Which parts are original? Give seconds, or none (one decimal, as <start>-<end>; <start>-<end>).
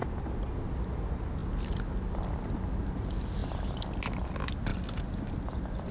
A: 0.0-5.9